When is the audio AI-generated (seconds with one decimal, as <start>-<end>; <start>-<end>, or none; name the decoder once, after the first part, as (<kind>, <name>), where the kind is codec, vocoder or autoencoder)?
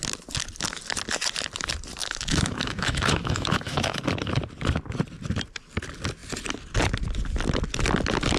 2.0-4.0 (autoencoder, DAC-VAE)